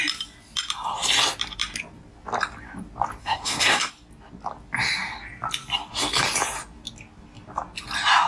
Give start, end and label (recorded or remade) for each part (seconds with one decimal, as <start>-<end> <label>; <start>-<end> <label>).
0.0-3.2 recorded; 3.2-3.9 remade; 3.9-8.3 recorded